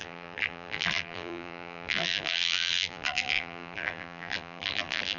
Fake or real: fake